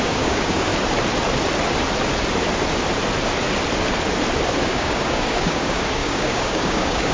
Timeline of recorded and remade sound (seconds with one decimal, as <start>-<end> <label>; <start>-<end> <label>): 0.0-0.7 remade; 0.7-4.6 recorded; 4.6-7.1 remade